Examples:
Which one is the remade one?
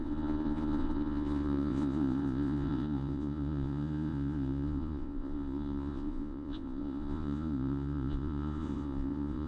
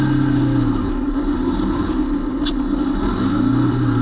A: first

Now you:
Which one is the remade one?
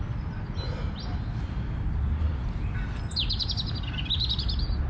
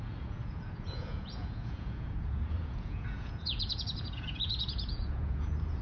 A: second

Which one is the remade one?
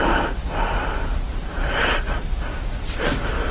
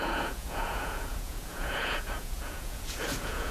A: second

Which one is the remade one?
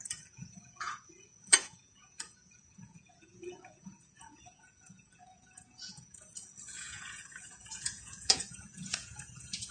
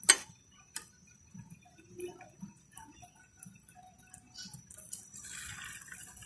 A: first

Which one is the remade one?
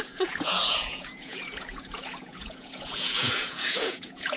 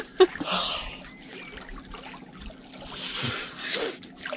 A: first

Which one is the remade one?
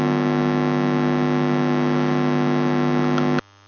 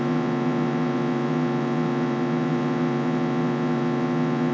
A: second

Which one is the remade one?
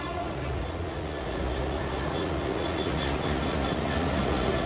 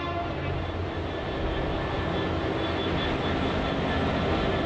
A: first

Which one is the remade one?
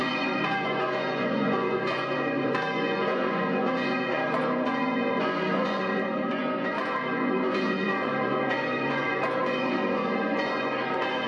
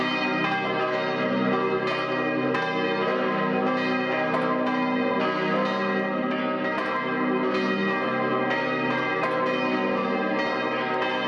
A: first